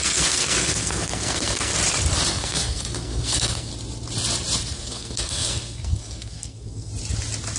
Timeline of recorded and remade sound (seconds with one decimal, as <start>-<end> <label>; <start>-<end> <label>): 0.0-1.7 remade; 1.7-2.3 recorded; 2.3-3.7 remade; 3.7-4.7 recorded; 4.7-6.9 remade; 6.9-7.6 recorded